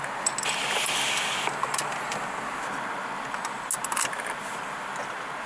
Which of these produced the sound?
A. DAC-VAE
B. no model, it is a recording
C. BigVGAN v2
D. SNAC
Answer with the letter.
B